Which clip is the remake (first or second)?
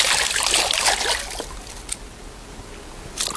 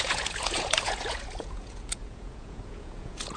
second